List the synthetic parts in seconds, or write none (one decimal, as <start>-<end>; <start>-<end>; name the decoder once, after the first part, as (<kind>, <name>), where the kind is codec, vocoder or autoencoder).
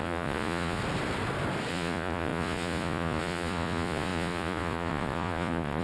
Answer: 0.0-0.8 (vocoder, Vocos); 1.7-5.8